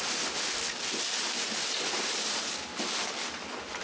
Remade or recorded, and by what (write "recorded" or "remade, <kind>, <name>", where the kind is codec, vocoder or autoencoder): recorded